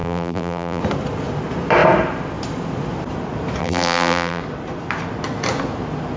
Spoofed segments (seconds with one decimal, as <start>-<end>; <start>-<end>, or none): 0.0-0.8; 3.6-4.4

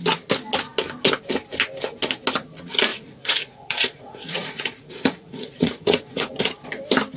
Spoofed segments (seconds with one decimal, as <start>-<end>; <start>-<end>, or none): 2.9-6.3

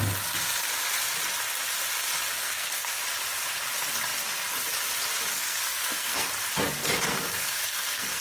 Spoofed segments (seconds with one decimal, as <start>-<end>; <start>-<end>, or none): 2.3-3.0; 5.3-6.3; 6.8-8.2